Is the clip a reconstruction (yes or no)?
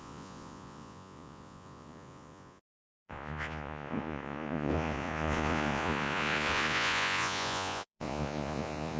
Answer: yes